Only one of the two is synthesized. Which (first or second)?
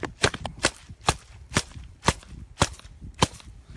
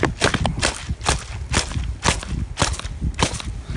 first